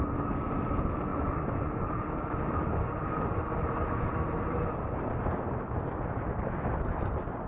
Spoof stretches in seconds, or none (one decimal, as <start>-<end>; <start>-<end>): 1.1-1.7